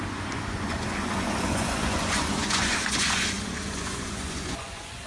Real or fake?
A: fake